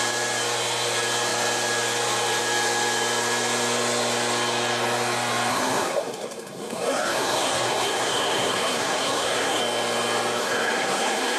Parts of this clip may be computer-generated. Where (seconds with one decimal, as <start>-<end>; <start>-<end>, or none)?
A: 5.5-9.6; 10.4-11.4